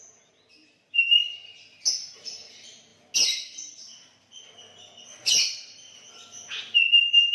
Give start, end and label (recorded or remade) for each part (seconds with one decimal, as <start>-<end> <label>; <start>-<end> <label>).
0.0-7.3 recorded